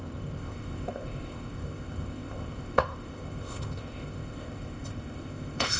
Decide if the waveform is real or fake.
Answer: fake